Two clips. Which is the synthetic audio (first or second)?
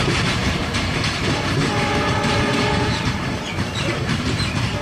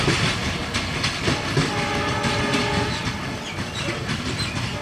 first